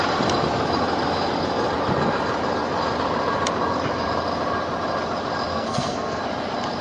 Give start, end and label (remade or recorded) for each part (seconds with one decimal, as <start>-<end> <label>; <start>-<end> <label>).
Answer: 0.0-5.5 recorded; 5.5-6.2 remade; 6.2-6.8 recorded